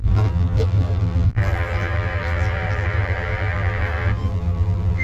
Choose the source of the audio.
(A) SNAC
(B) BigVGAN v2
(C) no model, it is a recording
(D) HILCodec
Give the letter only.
B